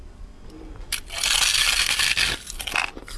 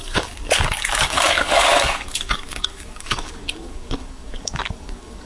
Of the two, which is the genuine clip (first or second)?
first